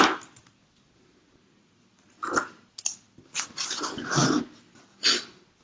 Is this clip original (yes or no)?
yes